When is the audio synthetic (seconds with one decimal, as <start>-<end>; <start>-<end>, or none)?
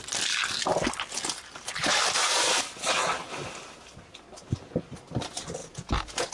5.6-6.3